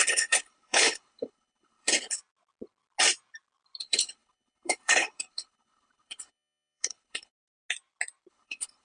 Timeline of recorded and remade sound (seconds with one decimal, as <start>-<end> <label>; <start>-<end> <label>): 0.0-2.2 remade; 2.2-3.8 recorded; 3.8-7.3 remade; 7.3-8.3 recorded; 8.3-8.8 remade